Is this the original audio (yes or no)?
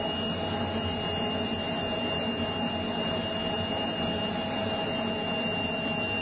yes